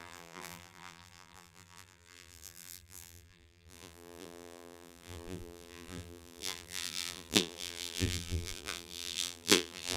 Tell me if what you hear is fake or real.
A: fake